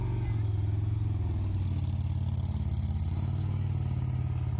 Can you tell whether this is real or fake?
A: real